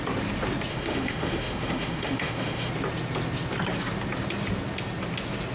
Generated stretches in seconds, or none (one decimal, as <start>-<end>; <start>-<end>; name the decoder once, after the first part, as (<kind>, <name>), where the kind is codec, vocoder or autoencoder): 0.7-2.7 (autoencoder, DAC-VAE)